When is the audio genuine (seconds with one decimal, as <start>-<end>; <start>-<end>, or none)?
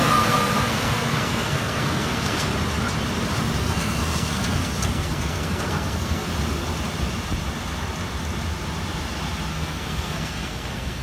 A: 2.5-3.6; 6.3-9.5